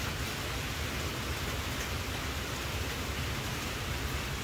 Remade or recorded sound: recorded